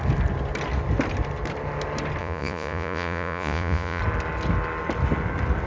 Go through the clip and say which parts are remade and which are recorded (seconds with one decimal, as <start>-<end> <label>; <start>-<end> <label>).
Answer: 0.0-2.2 recorded; 2.2-4.0 remade; 4.0-5.7 recorded